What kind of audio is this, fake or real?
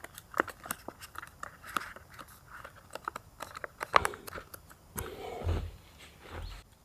real